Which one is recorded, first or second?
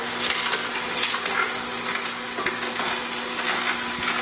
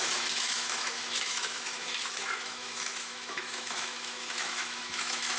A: first